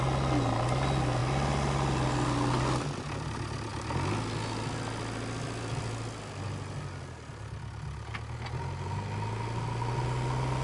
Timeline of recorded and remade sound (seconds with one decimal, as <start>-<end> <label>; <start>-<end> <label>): 0.0-10.6 recorded